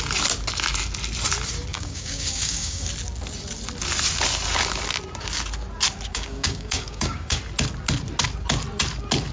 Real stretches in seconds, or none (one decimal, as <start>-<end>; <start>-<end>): 0.0-1.7; 2.9-6.1; 7.4-9.3